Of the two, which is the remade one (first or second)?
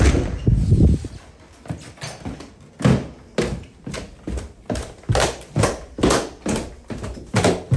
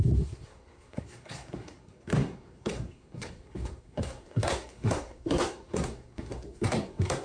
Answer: second